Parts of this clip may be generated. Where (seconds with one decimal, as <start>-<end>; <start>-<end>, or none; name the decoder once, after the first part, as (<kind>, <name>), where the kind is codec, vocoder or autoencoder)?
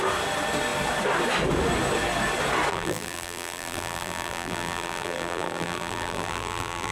2.7-6.9 (vocoder, BigVGAN v2)